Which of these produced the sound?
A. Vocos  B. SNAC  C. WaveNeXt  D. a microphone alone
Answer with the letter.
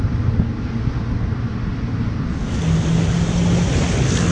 D